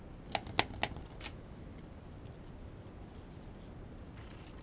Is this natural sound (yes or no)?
yes